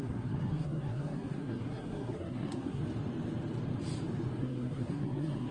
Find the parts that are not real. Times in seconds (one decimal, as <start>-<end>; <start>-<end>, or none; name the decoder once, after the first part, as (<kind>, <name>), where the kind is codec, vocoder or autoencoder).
0.0-2.8 (codec, SNAC); 4.4-5.5